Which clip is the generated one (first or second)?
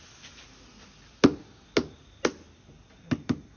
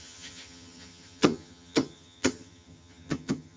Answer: second